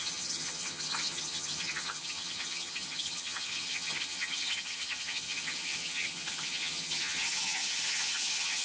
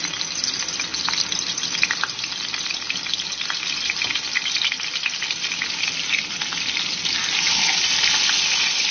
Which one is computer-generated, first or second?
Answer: first